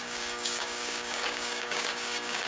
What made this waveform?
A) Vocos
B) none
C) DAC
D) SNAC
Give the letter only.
C